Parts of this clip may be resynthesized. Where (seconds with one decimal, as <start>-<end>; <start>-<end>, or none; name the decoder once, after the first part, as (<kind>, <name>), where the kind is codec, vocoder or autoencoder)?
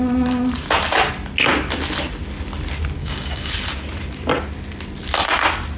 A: 3.0-3.5 (codec, DAC)